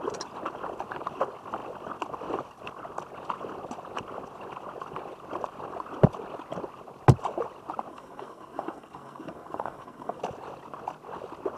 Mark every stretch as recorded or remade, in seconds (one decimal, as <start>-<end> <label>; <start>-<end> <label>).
0.0-7.9 recorded; 7.9-10.2 remade; 10.2-11.6 recorded